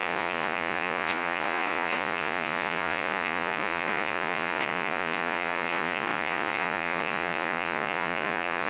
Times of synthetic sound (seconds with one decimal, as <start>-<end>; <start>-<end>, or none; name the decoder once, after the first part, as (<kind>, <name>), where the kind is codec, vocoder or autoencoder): 0.0-8.7 (vocoder, Vocos)